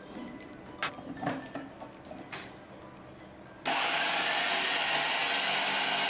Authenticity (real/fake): real